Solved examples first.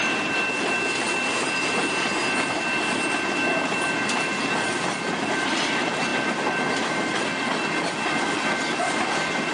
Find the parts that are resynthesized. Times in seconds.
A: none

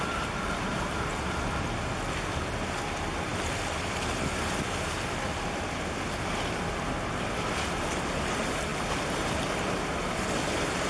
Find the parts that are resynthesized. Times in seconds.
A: none

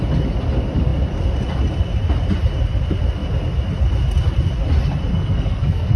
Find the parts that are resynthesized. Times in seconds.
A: 5.1-6.0 (codec, SNAC)

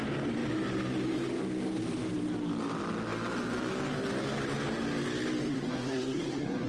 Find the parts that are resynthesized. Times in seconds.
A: 5.5-6.7 (codec, SNAC)